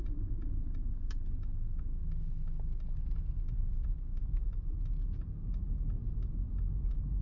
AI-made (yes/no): no